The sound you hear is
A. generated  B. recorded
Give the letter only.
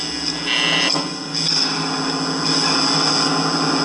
B